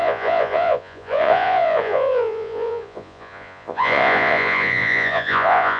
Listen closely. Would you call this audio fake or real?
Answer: fake